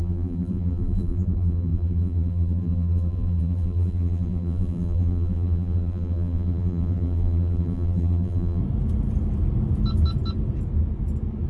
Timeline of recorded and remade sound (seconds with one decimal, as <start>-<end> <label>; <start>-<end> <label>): 0.0-8.6 remade; 8.6-11.5 recorded